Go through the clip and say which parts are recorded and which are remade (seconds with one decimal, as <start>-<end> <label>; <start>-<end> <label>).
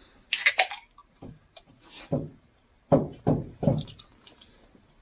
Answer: 0.0-1.0 recorded; 1.0-4.0 remade; 4.0-5.0 recorded